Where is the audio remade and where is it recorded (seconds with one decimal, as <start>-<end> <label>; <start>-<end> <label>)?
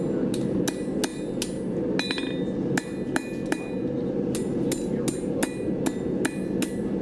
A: 0.0-7.0 recorded